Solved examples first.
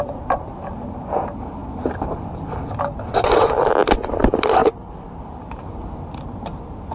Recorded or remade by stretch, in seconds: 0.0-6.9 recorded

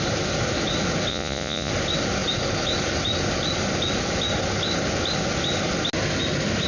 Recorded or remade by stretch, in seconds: 0.0-1.1 recorded; 1.1-1.7 remade; 1.7-6.7 recorded